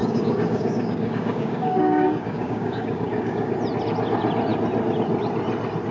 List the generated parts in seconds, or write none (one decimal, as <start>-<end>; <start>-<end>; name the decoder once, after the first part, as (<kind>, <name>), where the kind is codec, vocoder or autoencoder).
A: 0.0-3.5 (codec, DAC)